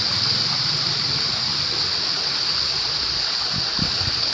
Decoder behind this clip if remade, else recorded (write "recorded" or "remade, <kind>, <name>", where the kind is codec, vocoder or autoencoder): recorded